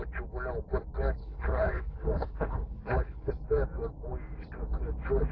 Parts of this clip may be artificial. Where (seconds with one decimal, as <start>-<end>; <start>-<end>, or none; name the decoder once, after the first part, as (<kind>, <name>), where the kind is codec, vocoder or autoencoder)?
1.2-3.3 (codec, HILCodec)